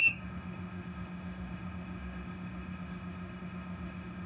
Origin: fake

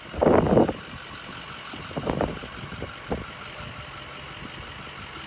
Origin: real